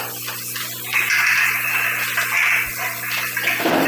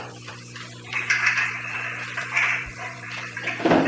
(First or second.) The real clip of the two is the first